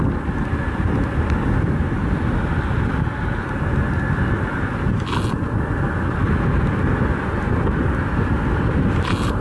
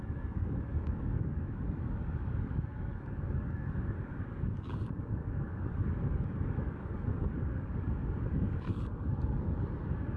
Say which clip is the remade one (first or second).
second